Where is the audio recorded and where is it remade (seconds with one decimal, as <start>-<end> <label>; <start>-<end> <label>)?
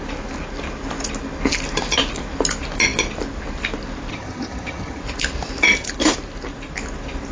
0.0-4.1 recorded; 4.1-5.0 remade; 5.0-7.3 recorded